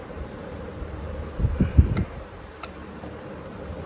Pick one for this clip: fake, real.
fake